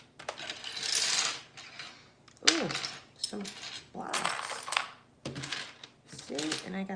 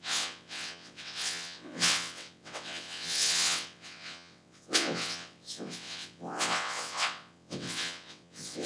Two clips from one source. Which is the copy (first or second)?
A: second